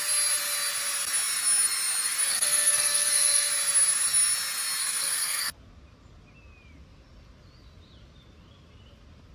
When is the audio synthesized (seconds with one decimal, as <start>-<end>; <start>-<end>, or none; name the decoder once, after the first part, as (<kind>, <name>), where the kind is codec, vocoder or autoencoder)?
2.3-3.5 (codec, SNAC); 4.8-5.5